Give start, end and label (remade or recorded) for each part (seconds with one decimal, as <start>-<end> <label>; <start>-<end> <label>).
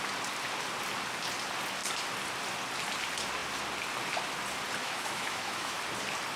0.0-4.8 recorded; 4.8-5.8 remade; 5.8-6.4 recorded